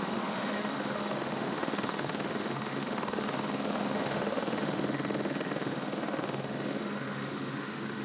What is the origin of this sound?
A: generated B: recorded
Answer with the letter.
A